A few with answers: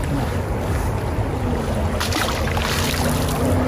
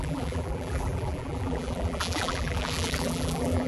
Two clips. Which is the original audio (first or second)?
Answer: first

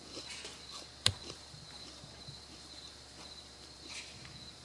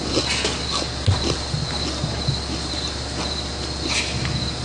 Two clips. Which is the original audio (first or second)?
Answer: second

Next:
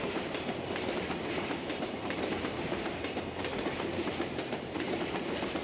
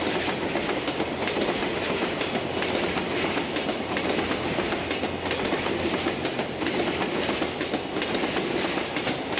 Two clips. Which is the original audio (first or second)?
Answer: second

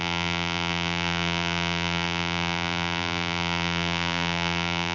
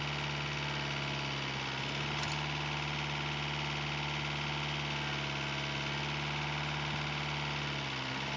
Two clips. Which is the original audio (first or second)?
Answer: second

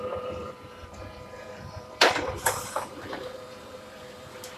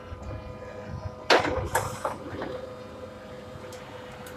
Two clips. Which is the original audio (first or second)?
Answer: second